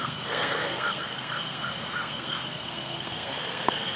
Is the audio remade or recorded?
remade